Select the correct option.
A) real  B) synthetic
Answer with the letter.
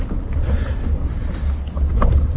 A